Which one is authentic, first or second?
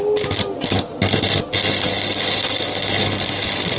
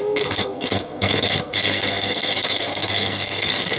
first